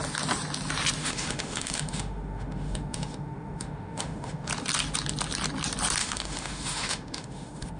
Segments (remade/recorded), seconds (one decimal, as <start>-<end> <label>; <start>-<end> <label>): 0.0-1.0 recorded; 1.0-4.5 remade; 4.5-6.0 recorded; 6.0-7.8 remade